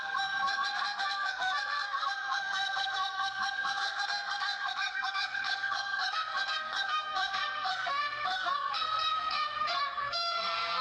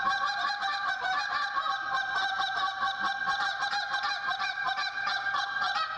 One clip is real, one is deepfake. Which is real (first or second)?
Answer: second